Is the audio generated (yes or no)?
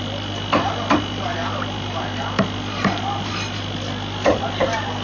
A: no